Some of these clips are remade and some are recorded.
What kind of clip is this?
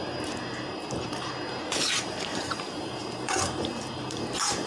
remade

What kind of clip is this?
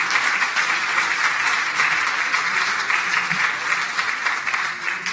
recorded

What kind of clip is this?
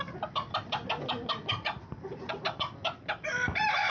remade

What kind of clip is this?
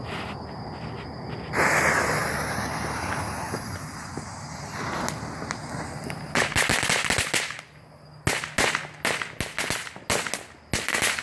recorded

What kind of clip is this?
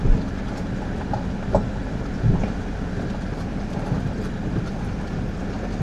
recorded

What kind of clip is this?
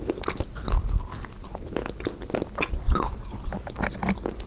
recorded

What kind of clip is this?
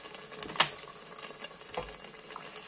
recorded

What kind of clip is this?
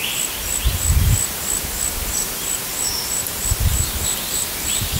recorded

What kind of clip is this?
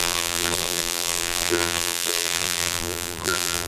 remade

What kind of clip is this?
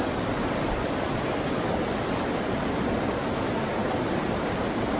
remade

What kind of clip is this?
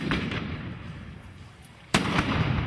remade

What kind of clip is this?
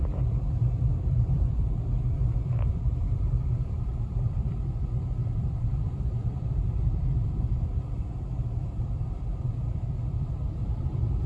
remade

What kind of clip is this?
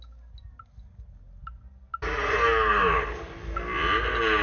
recorded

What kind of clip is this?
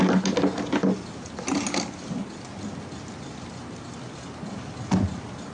recorded